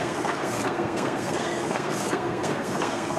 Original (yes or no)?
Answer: no